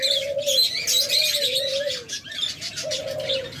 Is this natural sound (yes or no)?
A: yes